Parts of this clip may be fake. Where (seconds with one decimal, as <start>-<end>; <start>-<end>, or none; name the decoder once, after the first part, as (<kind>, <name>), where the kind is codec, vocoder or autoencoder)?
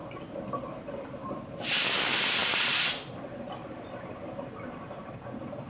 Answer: 0.0-2.0 (vocoder, BigVGAN v2); 2.4-5.1